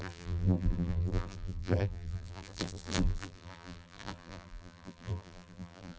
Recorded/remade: remade